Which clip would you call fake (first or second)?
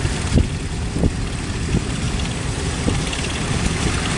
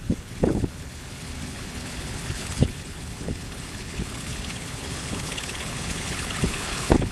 second